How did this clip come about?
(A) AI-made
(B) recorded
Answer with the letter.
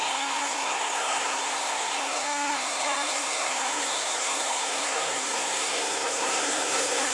A